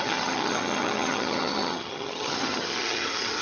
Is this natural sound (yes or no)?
no